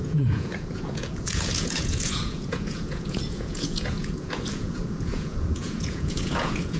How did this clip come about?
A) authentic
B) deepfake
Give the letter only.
B